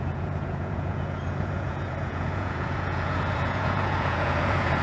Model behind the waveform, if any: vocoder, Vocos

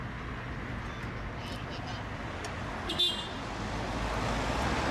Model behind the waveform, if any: none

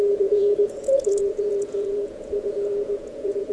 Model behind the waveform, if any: vocoder, Vocos